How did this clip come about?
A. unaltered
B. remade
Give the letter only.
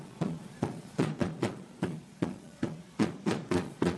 B